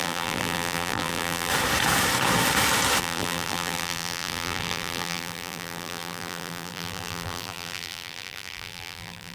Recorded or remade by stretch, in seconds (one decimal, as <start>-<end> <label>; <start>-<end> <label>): 0.0-1.5 remade; 1.5-3.0 recorded; 3.0-9.3 remade